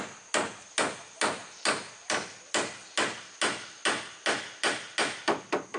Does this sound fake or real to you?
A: real